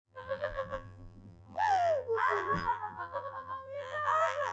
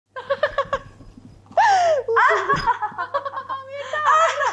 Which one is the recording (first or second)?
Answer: second